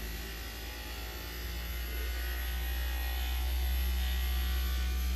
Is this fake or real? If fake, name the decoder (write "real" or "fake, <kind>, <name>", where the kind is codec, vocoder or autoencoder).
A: real